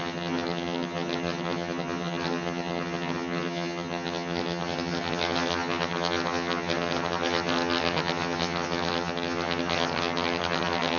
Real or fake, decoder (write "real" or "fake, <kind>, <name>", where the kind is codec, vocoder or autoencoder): fake, vocoder, HiFi-GAN